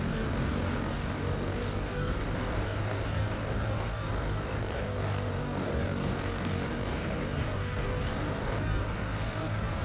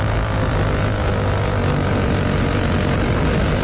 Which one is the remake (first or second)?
first